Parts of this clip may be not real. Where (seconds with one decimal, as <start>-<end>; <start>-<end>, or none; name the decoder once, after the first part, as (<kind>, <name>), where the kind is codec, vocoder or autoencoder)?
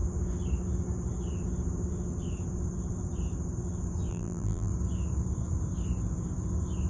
4.1-4.7 (vocoder, BigVGAN v2)